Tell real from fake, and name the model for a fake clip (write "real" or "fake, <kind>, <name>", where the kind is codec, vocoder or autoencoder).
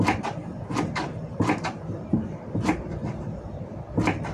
fake, vocoder, BigVGAN v2